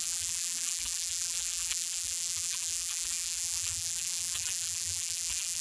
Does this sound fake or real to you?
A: fake